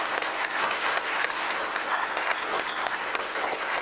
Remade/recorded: remade